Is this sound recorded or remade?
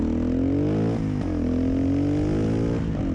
recorded